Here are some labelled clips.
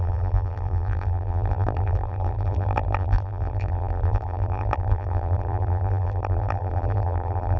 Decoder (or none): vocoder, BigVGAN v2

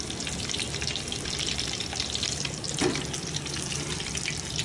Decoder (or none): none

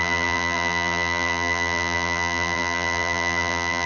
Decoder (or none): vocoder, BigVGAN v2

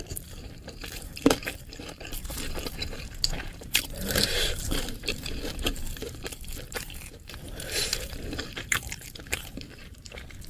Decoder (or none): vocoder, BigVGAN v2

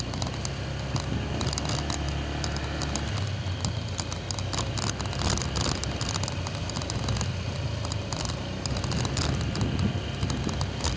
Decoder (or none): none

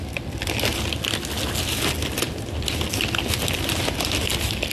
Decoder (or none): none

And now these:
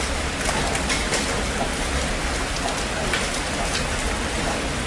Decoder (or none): none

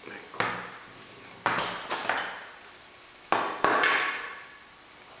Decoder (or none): none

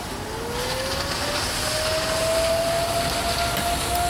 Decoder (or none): none